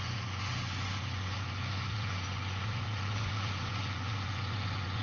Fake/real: fake